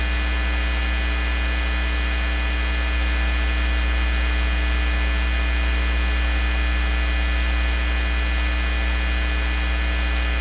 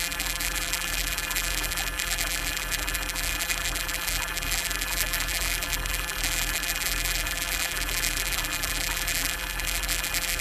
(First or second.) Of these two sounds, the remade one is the second